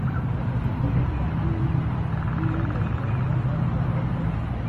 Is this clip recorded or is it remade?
recorded